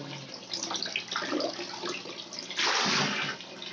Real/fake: real